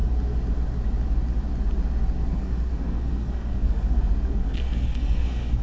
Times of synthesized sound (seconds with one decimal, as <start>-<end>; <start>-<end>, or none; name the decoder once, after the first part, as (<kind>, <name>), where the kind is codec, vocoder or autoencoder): 2.3-5.6 (codec, SNAC)